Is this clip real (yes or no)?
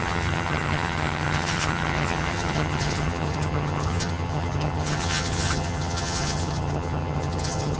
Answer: no